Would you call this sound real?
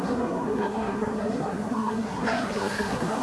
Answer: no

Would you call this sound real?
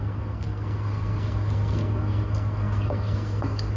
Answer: no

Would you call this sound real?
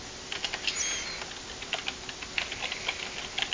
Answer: yes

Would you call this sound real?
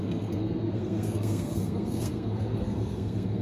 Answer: no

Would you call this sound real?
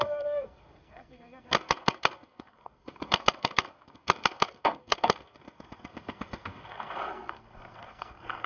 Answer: no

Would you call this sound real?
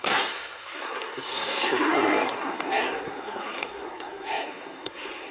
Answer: no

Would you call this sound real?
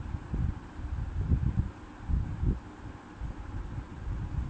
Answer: yes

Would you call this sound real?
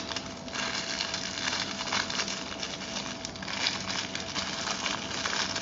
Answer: yes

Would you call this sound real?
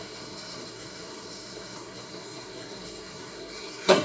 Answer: no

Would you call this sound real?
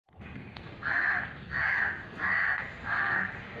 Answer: no